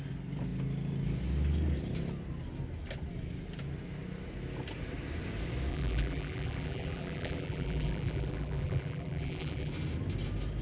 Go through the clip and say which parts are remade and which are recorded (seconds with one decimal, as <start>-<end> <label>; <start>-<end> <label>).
0.0-5.7 recorded; 5.7-9.7 remade; 9.7-10.6 recorded